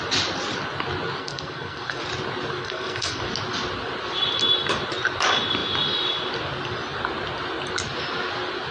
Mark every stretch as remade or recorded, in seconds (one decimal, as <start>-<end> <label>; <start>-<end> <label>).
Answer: 0.0-1.2 recorded; 1.2-2.0 remade; 2.0-2.6 recorded; 2.6-3.2 remade; 3.2-8.7 recorded